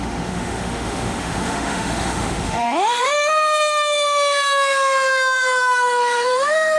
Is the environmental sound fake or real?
fake